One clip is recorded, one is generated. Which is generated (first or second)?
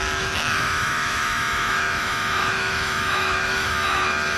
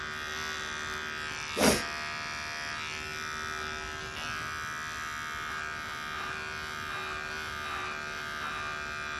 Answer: first